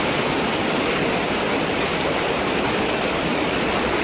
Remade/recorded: recorded